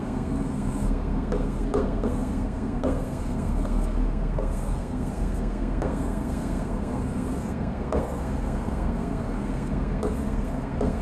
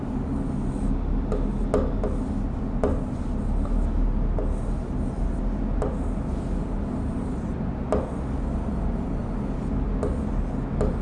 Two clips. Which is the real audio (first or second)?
second